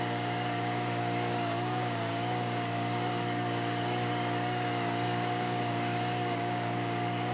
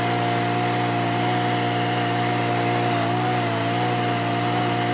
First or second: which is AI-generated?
first